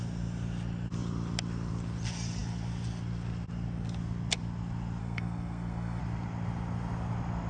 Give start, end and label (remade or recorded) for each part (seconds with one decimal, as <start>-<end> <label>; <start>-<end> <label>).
0.0-5.0 recorded; 5.0-6.0 remade; 6.0-7.5 recorded